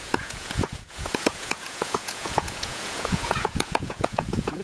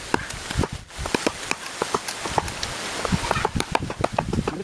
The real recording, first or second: second